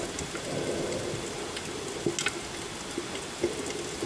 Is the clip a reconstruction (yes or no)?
no